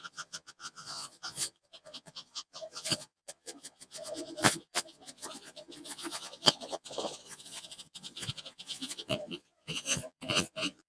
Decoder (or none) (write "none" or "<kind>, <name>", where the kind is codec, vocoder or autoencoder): vocoder, Vocos